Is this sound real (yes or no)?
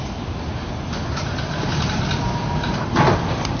yes